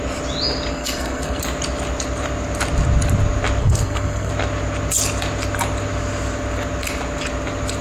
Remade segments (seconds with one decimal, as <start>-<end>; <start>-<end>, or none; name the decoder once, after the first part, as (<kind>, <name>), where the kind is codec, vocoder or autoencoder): 0.7-1.4 (codec, SNAC); 3.6-4.3